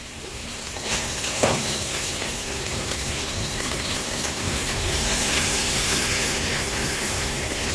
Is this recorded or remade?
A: remade